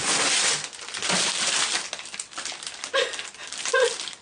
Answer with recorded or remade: recorded